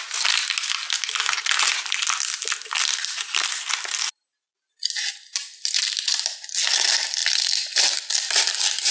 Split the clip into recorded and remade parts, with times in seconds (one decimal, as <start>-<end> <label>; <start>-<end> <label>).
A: 0.0-8.9 recorded